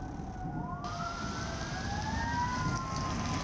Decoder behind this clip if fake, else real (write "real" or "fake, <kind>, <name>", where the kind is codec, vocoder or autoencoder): real